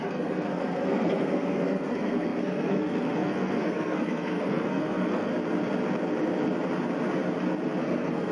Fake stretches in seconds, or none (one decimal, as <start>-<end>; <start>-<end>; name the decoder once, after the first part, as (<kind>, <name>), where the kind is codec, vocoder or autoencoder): 0.0-5.3 (codec, SNAC); 7.8-8.3